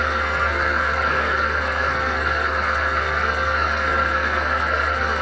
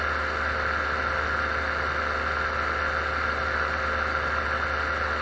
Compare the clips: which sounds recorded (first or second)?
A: second